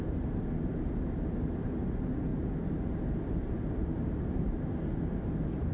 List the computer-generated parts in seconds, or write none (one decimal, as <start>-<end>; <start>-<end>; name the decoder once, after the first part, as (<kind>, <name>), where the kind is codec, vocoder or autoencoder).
none